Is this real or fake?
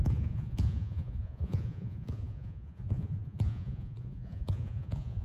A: fake